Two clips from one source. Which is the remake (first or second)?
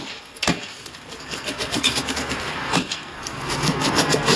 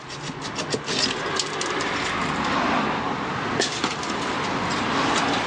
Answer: first